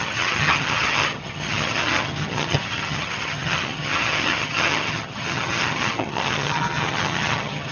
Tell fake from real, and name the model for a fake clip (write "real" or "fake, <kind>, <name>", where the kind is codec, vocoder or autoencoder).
fake, vocoder, HiFi-GAN